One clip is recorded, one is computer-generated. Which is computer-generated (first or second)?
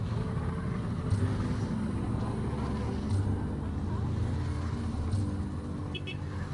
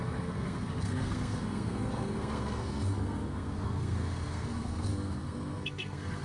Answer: second